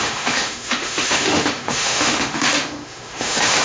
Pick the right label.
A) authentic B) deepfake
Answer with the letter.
B